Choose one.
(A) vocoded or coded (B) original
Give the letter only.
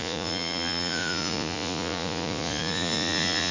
A